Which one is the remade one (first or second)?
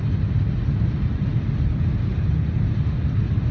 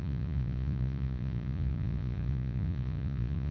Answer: second